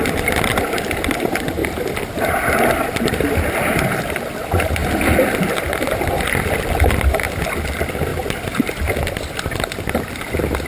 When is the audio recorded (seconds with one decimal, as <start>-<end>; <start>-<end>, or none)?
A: 0.0-10.7